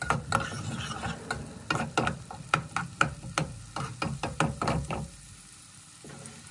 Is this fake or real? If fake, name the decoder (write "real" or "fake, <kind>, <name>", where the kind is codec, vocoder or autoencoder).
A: real